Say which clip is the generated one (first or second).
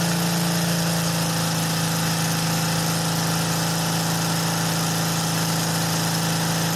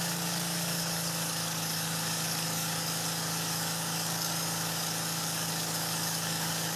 second